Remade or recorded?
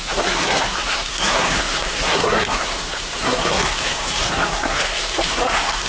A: remade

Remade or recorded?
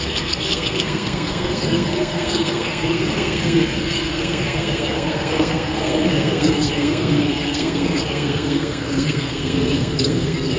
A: remade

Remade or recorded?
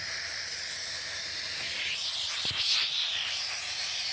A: recorded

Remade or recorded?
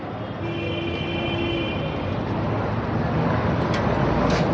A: recorded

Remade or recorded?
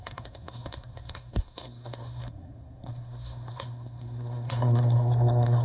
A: remade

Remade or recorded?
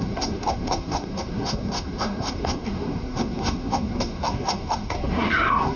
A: remade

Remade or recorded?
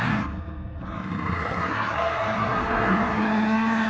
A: remade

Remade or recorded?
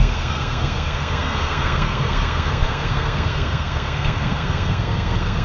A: remade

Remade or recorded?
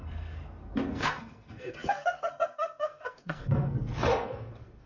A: remade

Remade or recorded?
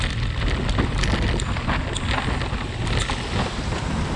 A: recorded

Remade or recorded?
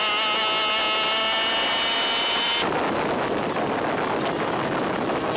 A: recorded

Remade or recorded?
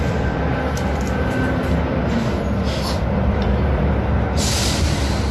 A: recorded